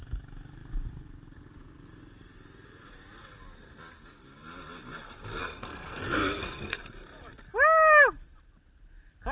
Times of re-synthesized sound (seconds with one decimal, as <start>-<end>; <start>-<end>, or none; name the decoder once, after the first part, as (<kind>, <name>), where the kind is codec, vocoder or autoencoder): 5.4-6.8 (codec, SNAC)